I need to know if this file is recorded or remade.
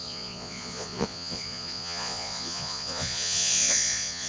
remade